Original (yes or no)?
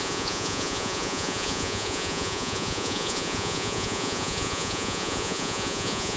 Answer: no